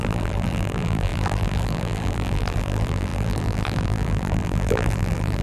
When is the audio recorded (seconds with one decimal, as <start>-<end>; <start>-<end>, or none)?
none